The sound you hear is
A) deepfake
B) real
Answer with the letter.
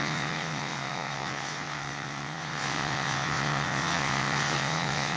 A